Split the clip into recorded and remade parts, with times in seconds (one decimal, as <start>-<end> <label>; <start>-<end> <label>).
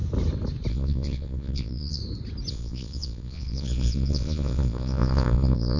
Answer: 0.0-0.7 recorded; 0.7-2.0 remade; 2.0-2.5 recorded; 2.5-5.8 remade